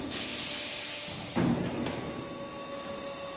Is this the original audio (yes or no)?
yes